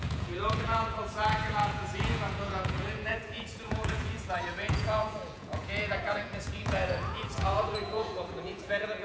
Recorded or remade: remade